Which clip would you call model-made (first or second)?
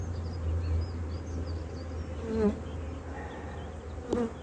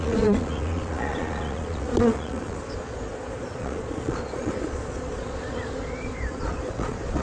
second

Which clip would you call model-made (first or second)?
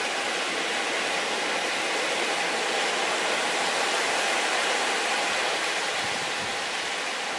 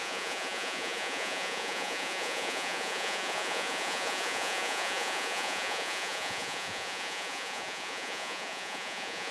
second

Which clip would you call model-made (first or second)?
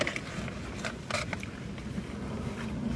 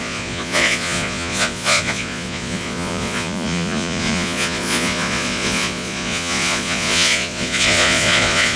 second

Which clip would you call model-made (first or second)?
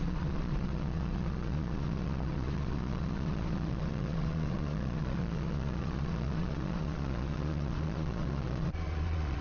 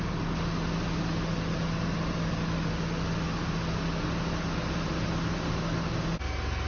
first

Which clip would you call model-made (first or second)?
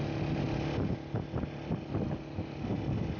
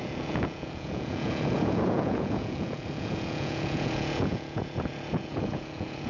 second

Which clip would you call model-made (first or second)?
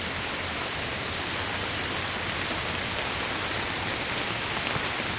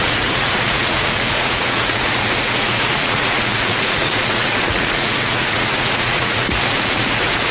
second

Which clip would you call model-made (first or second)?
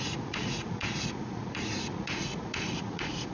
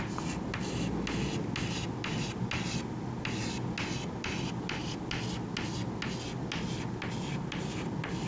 first